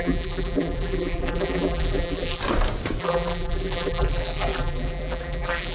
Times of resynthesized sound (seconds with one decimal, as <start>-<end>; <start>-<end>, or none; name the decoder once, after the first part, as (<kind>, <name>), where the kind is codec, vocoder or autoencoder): 0.0-2.4 (vocoder, BigVGAN v2); 3.0-5.7